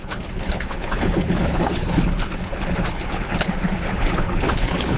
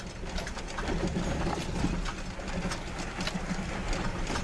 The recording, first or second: second